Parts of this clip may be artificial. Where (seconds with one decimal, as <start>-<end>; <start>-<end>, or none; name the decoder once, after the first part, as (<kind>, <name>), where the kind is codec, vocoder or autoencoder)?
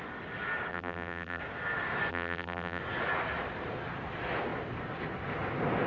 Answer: 0.7-1.4 (vocoder, BigVGAN v2); 2.1-2.8